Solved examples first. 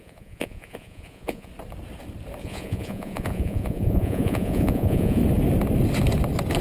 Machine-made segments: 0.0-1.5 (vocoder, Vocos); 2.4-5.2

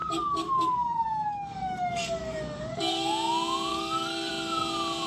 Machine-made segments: 0.0-3.1 (codec, DAC); 3.7-4.3